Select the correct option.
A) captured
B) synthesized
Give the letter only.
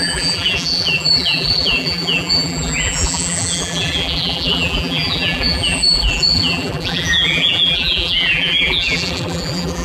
B